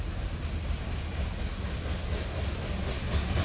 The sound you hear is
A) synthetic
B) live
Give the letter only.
B